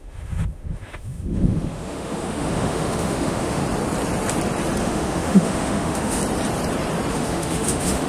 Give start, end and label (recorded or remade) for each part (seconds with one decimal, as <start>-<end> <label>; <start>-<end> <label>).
0.0-3.6 remade; 3.6-4.8 recorded; 4.8-6.2 remade; 6.2-7.1 recorded; 7.1-8.1 remade